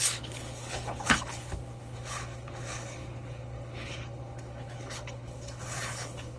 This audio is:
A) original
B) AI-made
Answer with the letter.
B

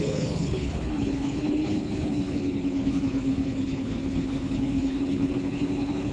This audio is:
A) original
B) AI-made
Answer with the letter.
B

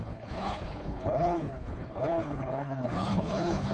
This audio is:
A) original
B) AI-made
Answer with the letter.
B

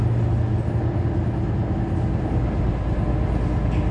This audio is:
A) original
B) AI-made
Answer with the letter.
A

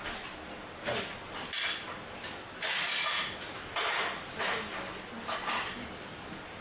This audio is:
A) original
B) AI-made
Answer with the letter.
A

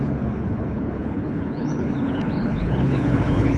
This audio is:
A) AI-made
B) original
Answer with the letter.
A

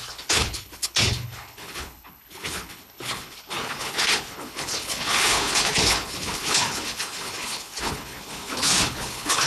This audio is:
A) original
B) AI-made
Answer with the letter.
B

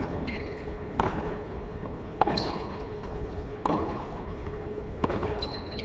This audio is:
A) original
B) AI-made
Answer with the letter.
B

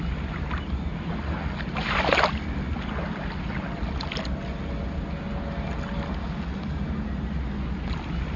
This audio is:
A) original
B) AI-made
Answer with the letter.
A